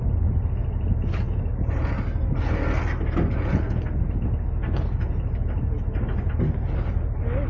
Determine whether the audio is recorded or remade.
recorded